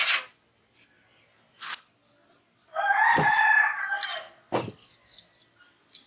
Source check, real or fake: real